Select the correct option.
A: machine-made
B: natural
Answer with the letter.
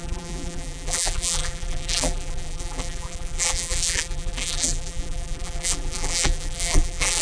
A